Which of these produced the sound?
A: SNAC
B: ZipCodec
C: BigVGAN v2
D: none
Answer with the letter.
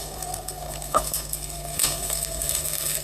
A